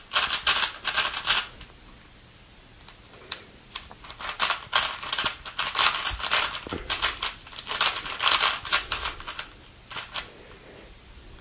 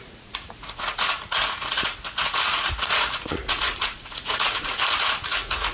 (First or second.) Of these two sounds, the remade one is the second